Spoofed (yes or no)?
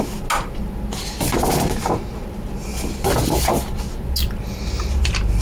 no